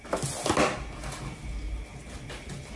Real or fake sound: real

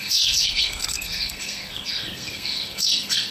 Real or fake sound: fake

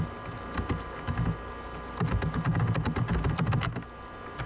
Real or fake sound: real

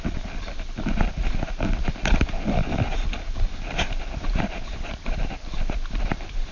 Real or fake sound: real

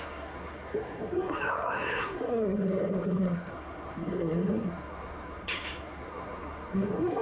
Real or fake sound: fake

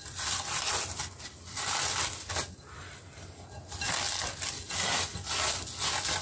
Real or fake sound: real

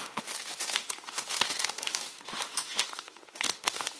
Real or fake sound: fake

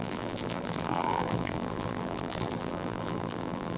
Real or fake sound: fake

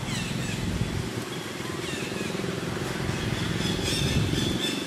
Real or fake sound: real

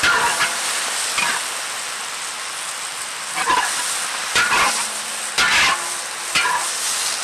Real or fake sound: real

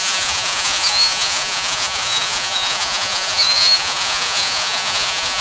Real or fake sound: fake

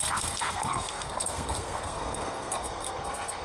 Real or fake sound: fake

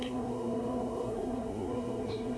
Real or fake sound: fake